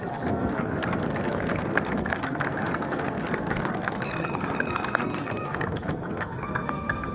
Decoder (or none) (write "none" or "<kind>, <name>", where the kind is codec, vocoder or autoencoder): codec, SNAC